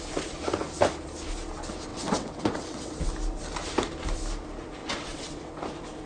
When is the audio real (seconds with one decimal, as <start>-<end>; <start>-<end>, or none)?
0.0-1.9; 3.0-4.8; 5.5-6.1